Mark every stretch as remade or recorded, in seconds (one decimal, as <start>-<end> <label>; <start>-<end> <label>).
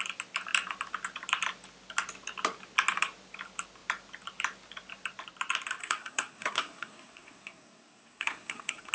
0.0-5.8 recorded; 5.8-8.9 remade